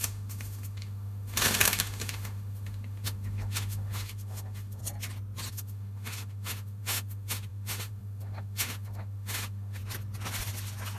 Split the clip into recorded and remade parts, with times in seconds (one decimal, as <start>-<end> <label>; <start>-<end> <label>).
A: 0.0-4.8 remade; 4.8-5.5 recorded; 5.5-9.8 remade; 9.8-11.0 recorded